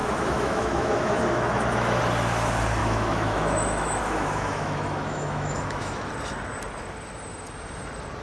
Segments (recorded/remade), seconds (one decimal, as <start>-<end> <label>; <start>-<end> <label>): 0.0-2.0 remade; 2.0-2.8 recorded; 2.8-6.1 remade; 6.1-8.2 recorded